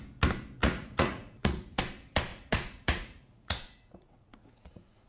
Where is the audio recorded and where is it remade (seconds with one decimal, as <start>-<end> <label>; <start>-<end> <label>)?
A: 0.0-0.6 recorded; 0.6-1.8 remade; 1.8-2.3 recorded; 2.3-5.1 remade